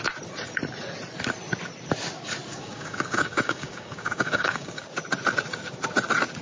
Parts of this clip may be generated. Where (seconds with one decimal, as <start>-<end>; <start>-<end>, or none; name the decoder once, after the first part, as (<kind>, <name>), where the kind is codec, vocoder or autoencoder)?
2.5-4.8 (codec, DAC)